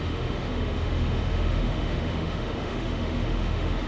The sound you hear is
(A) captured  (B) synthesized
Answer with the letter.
B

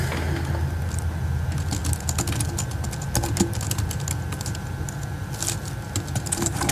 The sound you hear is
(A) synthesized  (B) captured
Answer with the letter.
B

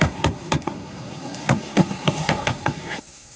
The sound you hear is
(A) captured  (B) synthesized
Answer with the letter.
B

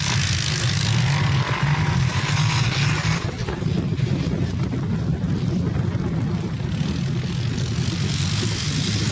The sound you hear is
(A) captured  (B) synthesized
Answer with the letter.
A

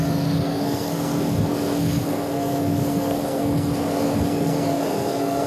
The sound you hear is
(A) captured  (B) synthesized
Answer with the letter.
B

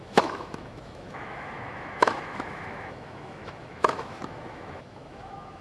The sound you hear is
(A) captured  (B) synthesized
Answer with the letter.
B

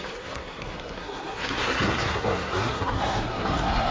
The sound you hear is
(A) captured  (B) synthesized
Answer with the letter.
B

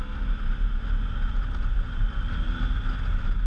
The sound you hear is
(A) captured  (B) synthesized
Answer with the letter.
A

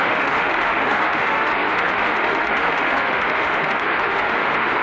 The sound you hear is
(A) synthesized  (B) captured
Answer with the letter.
A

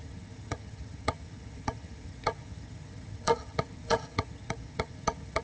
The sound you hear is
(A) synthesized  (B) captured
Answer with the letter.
A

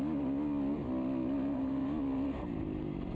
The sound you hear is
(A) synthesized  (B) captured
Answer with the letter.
B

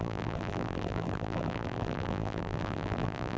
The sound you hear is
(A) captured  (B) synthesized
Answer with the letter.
B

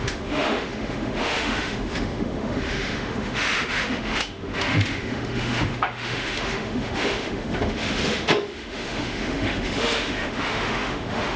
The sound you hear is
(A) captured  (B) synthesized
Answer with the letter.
B